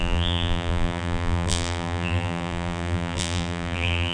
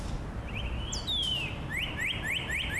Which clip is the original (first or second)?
second